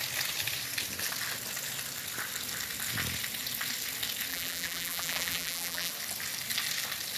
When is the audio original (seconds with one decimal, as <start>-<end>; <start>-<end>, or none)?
0.0-4.3; 5.9-7.2